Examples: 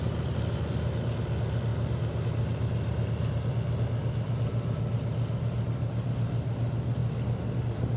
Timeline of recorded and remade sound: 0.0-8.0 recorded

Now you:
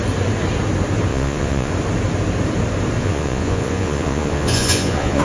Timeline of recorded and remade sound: 0.0-1.1 recorded; 1.1-1.7 remade; 1.7-3.0 recorded; 3.0-5.2 remade

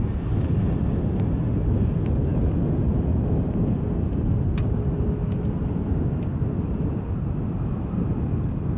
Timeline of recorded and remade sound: 0.0-8.8 recorded